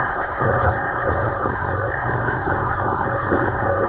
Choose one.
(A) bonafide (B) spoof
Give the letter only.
B